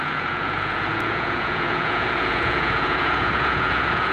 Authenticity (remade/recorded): remade